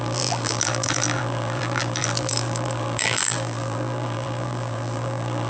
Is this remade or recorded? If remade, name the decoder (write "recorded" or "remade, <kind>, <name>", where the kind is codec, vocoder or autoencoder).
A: remade, vocoder, BigVGAN v2